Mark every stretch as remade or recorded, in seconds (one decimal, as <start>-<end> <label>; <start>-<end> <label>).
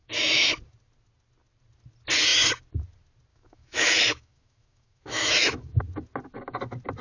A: 0.0-0.6 remade; 0.6-3.3 recorded; 3.3-5.8 remade; 5.8-7.0 recorded